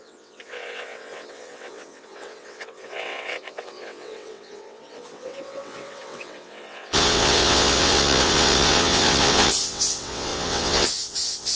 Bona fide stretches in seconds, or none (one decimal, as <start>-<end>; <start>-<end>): none